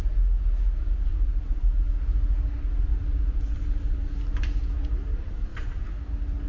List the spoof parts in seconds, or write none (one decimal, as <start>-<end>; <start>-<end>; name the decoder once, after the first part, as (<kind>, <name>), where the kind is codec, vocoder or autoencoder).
1.1-1.7 (vocoder, BigVGAN v2); 2.9-4.2; 5.5-6.1